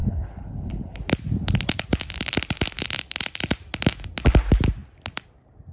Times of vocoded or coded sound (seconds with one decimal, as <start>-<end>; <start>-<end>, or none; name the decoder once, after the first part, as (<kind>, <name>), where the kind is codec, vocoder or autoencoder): 0.0-1.0 (codec, HILCodec)